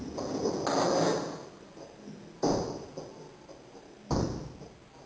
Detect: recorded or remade recorded